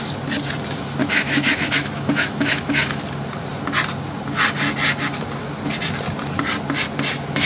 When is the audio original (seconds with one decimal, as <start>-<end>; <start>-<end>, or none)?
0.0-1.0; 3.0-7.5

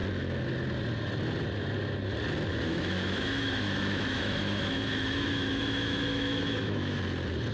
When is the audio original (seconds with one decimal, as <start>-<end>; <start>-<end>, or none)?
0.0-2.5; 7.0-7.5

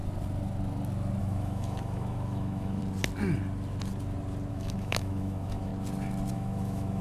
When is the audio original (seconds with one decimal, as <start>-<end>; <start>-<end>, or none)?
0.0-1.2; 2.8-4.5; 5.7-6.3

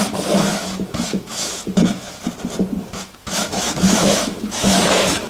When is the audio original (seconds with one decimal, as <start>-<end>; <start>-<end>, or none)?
0.0-0.5; 2.2-2.8

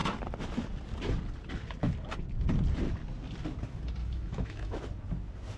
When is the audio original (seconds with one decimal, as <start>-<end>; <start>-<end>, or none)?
0.0-4.0; 4.8-5.6